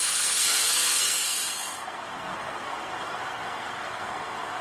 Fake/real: fake